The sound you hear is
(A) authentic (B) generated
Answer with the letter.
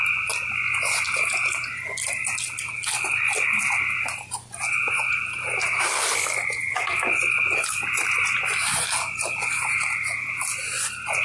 A